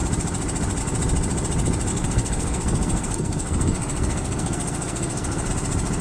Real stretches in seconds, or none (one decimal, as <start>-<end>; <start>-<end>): 0.0-1.9; 5.5-6.0